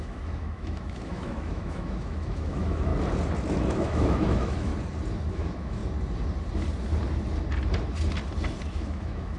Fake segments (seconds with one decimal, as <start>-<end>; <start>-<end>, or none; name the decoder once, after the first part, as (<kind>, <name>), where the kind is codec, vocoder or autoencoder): 0.0-2.9 (autoencoder, DAC-VAE); 3.7-4.7; 5.3-5.8; 8.7-9.4